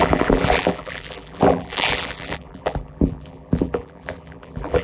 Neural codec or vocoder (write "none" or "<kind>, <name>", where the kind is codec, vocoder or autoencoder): vocoder, BigVGAN v2